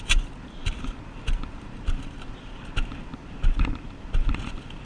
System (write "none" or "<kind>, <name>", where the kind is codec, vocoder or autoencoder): none